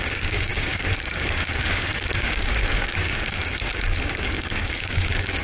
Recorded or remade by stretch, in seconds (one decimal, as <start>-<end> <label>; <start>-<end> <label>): 0.0-5.4 remade